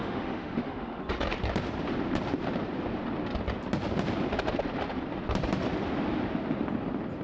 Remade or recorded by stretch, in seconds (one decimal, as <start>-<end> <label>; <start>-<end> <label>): 0.0-1.0 remade; 1.0-7.2 recorded